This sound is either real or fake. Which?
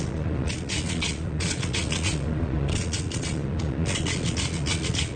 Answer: fake